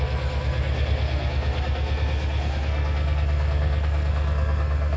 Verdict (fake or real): fake